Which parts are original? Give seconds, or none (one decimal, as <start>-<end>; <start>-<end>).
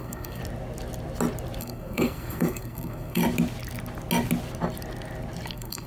0.4-1.6; 3.2-5.5